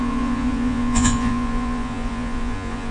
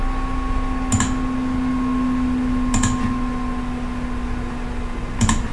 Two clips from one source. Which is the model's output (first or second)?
first